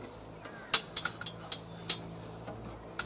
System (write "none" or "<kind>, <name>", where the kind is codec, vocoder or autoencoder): none